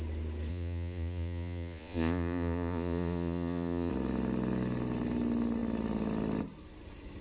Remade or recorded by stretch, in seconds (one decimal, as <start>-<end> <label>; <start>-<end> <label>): 0.0-0.5 recorded; 0.5-3.9 remade; 3.9-7.2 recorded